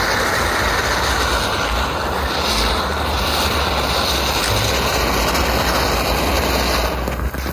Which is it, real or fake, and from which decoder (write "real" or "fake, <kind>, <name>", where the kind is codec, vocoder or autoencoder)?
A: real